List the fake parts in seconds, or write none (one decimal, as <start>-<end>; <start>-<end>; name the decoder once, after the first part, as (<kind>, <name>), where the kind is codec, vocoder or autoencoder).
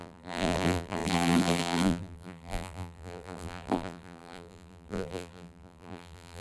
0.0-6.4 (vocoder, BigVGAN v2)